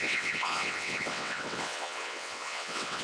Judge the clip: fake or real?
fake